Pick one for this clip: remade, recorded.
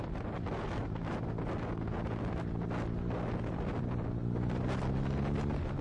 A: recorded